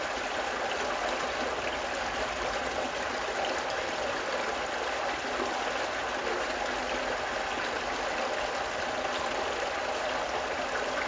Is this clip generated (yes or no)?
no